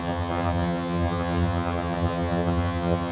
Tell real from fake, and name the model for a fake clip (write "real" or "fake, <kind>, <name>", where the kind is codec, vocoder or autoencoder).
fake, vocoder, HiFi-GAN